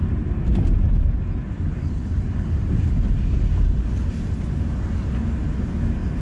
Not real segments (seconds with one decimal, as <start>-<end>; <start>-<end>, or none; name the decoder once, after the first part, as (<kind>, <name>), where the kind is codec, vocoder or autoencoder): 2.0-2.6 (codec, HILCodec)